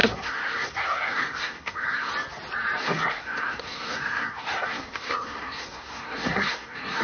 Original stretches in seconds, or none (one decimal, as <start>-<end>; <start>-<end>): 2.1-2.8